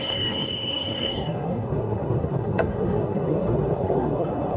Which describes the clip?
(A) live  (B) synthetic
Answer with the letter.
B